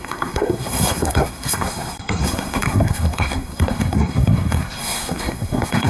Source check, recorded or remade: remade